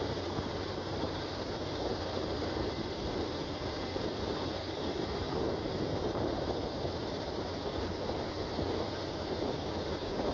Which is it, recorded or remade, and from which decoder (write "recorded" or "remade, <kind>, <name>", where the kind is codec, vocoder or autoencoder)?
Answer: remade, vocoder, BigVGAN v2